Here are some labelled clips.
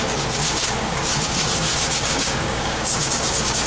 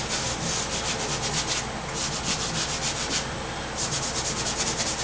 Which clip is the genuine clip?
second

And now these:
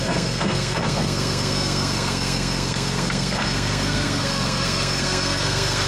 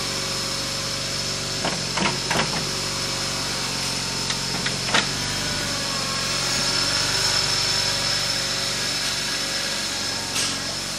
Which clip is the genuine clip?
second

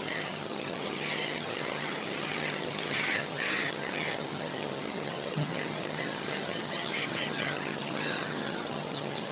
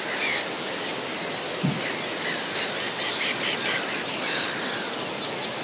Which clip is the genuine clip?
second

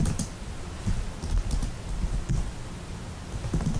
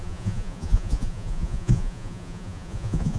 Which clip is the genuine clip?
first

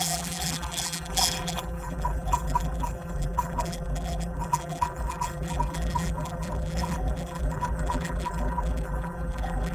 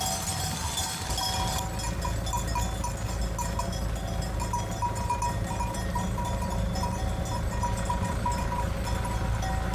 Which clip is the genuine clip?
second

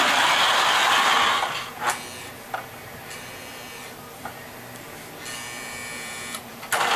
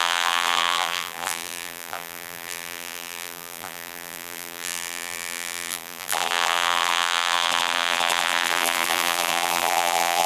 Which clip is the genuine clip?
first